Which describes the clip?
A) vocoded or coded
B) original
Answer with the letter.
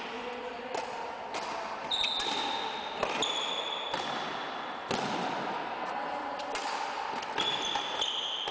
B